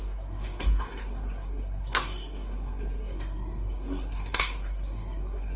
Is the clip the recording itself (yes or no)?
no